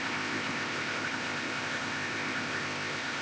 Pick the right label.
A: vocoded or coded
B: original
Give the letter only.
A